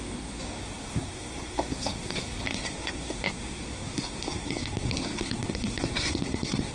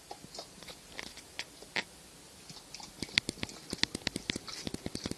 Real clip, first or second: second